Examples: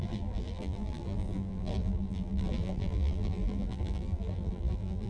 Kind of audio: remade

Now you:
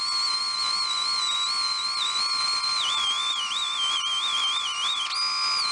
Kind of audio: recorded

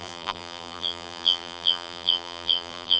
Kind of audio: remade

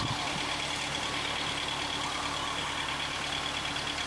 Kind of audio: recorded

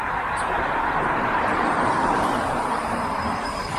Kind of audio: remade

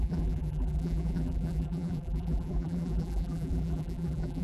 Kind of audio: remade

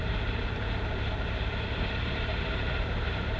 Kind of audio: remade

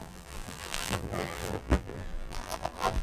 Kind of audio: remade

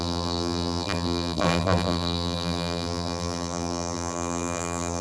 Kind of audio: remade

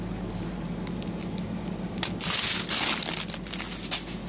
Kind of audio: recorded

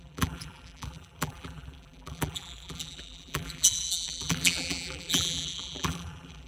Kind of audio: remade